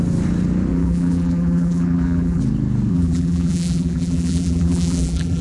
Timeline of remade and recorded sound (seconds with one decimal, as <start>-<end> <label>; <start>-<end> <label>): 0.0-0.7 recorded; 0.7-2.4 remade; 2.4-2.9 recorded; 2.9-5.4 remade